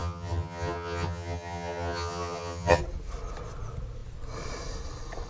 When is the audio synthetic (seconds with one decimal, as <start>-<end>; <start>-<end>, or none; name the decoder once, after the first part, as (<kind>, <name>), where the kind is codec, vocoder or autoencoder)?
0.0-2.8 (vocoder, HiFi-GAN)